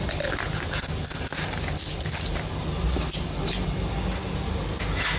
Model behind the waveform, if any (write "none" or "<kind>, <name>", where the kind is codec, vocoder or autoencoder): none